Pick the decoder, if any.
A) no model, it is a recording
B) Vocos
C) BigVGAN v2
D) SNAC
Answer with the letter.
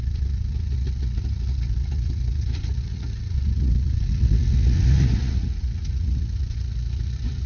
B